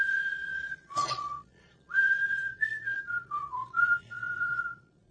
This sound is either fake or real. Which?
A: fake